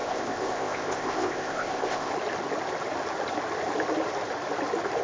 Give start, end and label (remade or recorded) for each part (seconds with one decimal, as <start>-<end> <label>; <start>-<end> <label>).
0.0-2.1 remade; 2.1-5.0 recorded